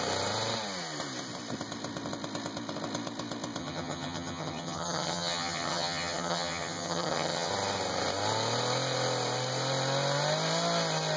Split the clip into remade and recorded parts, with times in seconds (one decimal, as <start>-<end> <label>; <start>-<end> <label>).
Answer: 0.0-3.6 recorded; 3.6-7.5 remade; 7.5-11.2 recorded